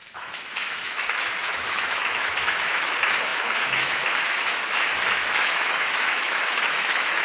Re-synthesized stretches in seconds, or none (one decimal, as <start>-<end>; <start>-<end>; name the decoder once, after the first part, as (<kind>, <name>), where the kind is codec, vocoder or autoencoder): 0.0-7.2 (autoencoder, DAC-VAE)